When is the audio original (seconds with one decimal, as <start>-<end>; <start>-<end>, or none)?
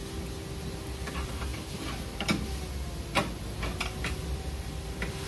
0.0-1.1; 1.5-4.0